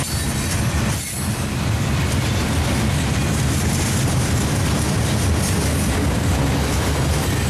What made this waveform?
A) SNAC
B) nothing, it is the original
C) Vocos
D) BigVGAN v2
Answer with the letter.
B